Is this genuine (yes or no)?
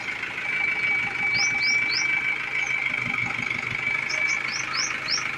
yes